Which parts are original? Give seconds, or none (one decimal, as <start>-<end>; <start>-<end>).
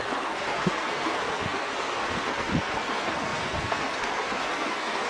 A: none